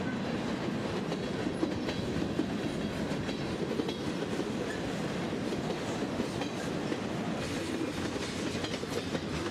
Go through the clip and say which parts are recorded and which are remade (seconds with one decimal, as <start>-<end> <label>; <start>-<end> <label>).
0.0-9.5 recorded